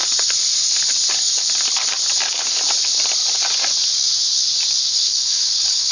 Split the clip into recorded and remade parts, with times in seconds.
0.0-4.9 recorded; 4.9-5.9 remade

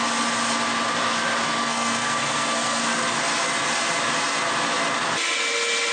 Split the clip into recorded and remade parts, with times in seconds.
0.0-1.6 recorded; 1.6-2.8 remade; 2.8-5.9 recorded

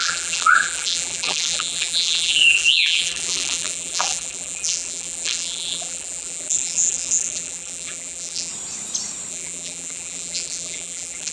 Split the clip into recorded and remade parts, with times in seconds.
0.0-8.5 remade; 8.5-9.3 recorded; 9.3-11.3 remade

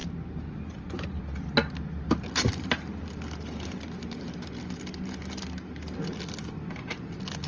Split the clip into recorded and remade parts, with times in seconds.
0.0-7.5 recorded